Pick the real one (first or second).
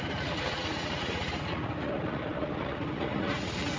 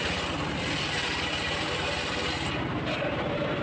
second